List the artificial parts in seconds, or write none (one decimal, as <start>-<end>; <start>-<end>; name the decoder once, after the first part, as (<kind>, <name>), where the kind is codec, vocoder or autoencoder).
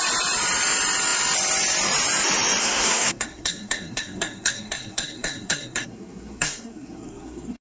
2.6-7.6 (codec, SNAC)